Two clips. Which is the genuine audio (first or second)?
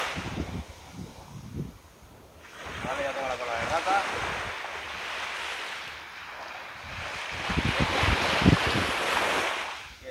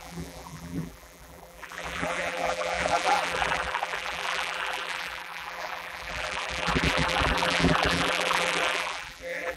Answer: first